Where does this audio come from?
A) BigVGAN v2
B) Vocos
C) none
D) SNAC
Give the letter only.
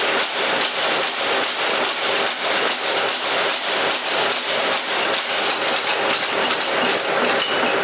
C